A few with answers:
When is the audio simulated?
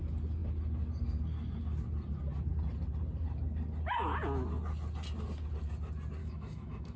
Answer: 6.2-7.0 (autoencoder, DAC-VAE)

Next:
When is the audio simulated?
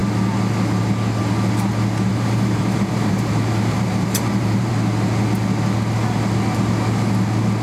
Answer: 2.1-4.7 (vocoder, BigVGAN v2)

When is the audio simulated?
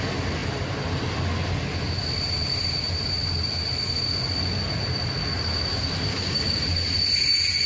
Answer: 6.1-6.6 (codec, DAC)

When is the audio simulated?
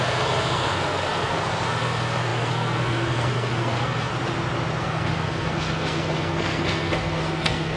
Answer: 0.0-4.1 (codec, SNAC); 4.8-7.8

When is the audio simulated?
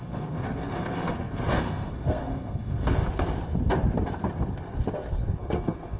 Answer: 0.0-3.0 (codec, SNAC); 5.4-6.0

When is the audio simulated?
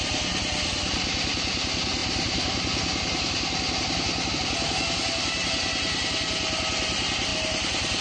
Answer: none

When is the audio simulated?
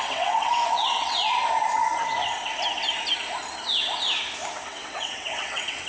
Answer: 0.0-1.2 (vocoder, WaveNeXt); 4.7-5.9